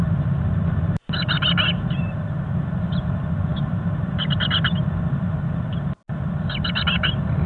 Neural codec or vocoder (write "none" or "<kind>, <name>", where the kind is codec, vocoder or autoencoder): none